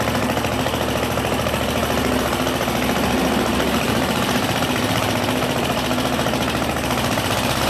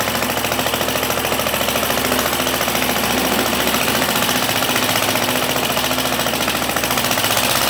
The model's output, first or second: first